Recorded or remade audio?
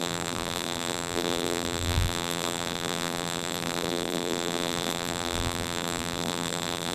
remade